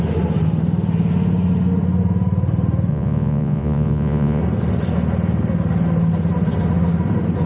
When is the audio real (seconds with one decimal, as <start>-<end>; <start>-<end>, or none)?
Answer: 0.0-2.9; 4.4-7.5